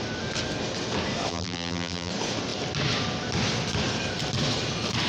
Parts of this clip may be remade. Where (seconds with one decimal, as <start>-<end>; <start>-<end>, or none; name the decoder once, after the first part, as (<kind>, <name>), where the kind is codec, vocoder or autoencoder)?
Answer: 1.3-2.1 (vocoder, BigVGAN v2)